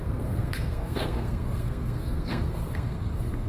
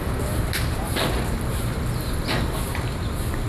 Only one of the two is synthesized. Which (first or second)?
first